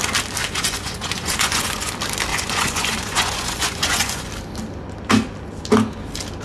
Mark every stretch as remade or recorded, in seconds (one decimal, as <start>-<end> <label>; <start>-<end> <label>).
0.0-0.4 recorded; 0.4-1.9 remade; 1.9-2.3 recorded; 2.3-4.3 remade; 4.3-6.4 recorded